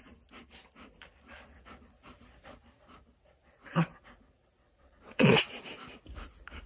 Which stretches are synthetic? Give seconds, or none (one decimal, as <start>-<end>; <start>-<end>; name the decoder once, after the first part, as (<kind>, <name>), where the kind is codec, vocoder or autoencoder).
4.6-5.4 (vocoder, Vocos)